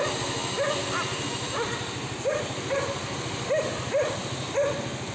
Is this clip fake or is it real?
real